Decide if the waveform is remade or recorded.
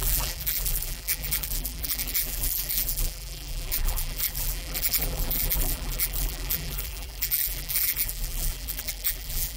remade